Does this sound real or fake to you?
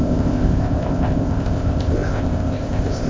fake